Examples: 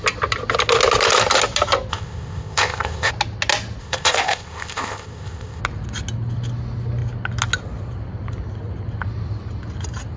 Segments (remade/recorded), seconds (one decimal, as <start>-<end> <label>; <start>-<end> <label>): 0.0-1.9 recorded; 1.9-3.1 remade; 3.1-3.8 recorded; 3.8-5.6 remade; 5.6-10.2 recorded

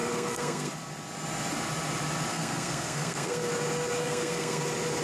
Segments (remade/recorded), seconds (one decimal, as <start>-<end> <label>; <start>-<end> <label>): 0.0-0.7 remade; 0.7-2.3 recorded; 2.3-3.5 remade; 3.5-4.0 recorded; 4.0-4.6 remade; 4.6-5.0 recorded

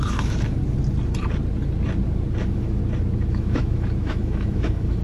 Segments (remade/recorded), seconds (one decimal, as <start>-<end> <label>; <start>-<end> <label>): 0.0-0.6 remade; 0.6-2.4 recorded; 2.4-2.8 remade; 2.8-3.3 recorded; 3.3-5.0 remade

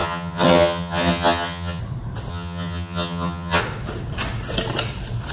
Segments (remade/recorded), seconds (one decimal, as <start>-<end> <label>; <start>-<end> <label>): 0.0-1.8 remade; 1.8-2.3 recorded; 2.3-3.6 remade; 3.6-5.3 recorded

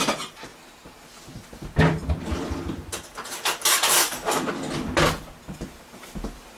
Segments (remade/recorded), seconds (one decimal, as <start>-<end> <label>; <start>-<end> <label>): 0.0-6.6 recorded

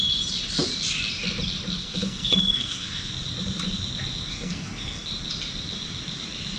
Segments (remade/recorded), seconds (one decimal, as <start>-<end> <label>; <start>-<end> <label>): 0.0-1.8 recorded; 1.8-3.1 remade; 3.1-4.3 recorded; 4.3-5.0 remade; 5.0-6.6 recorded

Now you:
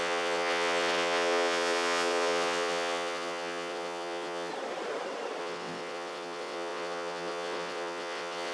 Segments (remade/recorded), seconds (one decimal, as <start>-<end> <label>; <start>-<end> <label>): 0.0-4.5 remade; 4.5-5.4 recorded; 5.4-8.5 remade